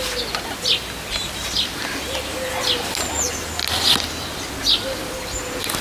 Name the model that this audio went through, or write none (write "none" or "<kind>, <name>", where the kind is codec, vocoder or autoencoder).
none